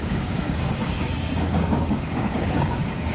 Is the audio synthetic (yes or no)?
yes